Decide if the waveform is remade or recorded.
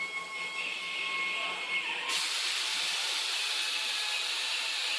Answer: recorded